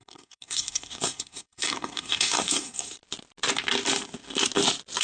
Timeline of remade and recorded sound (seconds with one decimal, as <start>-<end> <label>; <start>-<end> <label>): 0.0-3.0 remade; 3.0-5.0 recorded